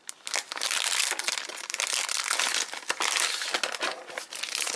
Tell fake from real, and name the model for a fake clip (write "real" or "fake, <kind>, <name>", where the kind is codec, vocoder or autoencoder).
real